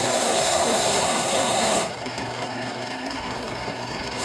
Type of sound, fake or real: fake